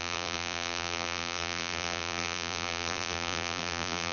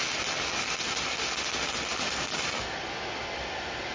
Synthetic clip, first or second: first